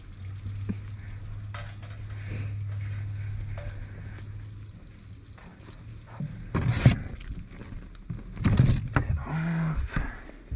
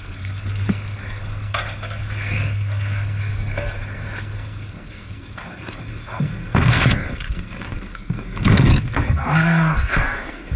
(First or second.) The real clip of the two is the first